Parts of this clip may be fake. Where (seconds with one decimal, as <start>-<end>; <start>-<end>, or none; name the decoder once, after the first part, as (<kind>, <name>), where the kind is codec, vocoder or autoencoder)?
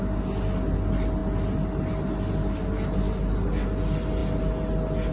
none